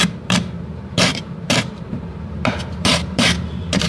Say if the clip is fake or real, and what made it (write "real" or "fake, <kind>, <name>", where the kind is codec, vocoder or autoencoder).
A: fake, vocoder, BigVGAN v2